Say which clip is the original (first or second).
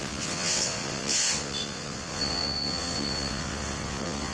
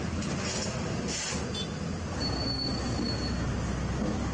second